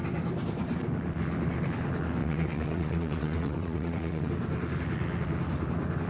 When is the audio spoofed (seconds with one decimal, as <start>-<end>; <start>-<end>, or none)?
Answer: 2.2-4.3